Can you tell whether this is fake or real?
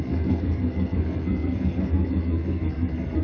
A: fake